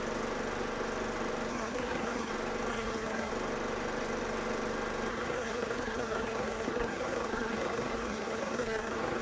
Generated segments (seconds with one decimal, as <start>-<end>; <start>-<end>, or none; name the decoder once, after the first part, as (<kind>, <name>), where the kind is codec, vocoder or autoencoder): 1.5-2.3 (codec, SNAC); 2.7-3.3; 5.1-9.2